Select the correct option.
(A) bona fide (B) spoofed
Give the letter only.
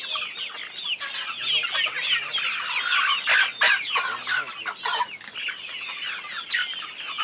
A